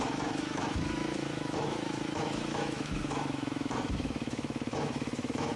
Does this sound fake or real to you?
fake